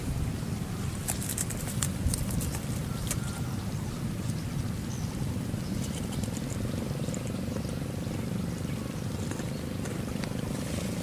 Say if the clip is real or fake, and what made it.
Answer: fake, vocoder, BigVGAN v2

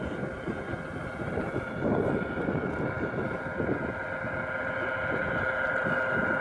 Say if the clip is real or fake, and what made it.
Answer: real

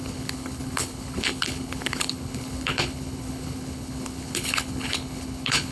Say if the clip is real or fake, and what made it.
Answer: fake, codec, HILCodec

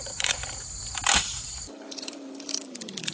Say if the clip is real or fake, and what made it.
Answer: fake, vocoder, BigVGAN v2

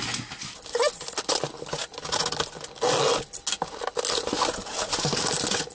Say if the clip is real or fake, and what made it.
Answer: real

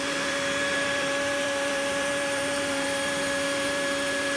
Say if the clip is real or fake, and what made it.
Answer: fake, vocoder, BigVGAN v2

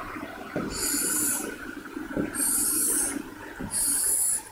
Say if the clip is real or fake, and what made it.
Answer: real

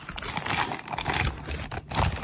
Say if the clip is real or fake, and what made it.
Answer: real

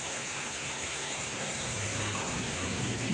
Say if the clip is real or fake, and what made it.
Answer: fake, codec, SNAC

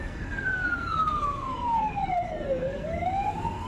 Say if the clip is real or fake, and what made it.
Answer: fake, codec, SNAC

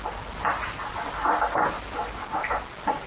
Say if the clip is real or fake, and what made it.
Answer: real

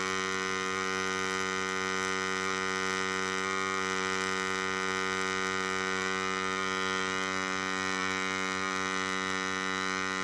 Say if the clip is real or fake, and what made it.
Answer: real